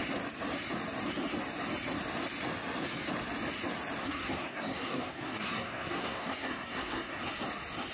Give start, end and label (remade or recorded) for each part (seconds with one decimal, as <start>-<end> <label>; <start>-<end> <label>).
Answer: 0.0-4.0 recorded; 4.0-7.2 remade; 7.2-7.9 recorded